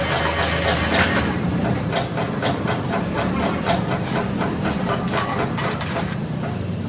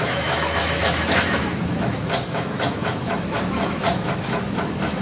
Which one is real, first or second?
first